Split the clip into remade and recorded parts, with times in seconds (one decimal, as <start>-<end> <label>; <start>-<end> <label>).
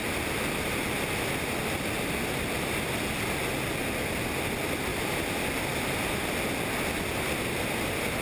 0.0-8.2 recorded